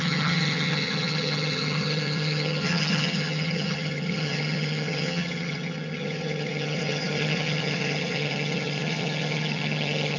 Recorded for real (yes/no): no